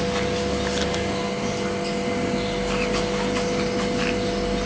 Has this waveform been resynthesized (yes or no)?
no